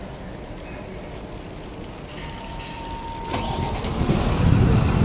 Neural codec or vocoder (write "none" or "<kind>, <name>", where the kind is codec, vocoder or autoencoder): none